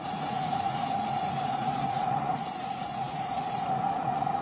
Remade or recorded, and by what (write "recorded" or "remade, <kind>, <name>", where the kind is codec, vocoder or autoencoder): remade, vocoder, Vocos